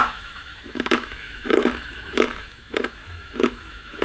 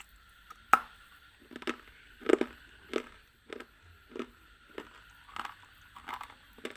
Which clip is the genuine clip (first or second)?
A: second